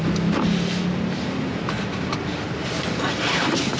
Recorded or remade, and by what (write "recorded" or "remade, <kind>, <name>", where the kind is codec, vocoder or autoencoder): recorded